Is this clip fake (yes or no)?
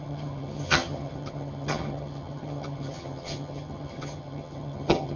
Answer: yes